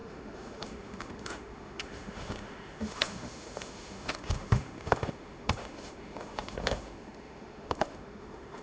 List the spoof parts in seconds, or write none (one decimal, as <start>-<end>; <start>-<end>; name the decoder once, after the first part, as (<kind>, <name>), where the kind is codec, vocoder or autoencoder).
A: 0.0-8.6 (autoencoder, DAC-VAE)